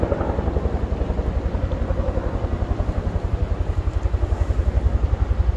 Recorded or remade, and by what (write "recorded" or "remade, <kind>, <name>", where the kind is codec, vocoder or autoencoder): recorded